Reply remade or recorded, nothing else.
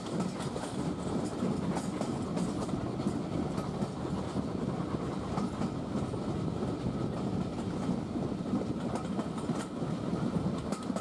recorded